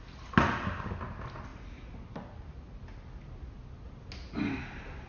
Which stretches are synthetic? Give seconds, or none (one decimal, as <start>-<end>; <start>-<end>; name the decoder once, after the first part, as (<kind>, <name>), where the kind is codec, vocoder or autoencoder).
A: none